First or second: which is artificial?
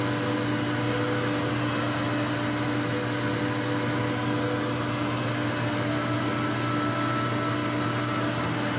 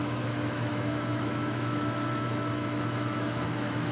second